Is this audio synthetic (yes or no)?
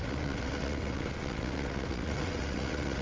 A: yes